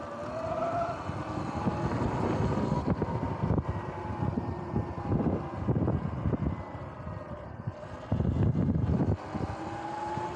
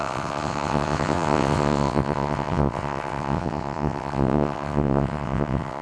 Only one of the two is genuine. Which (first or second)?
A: first